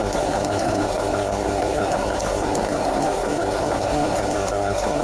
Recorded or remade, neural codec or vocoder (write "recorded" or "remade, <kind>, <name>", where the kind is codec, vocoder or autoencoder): remade, codec, SNAC